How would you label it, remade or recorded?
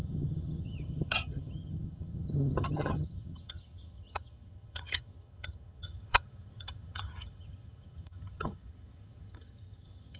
remade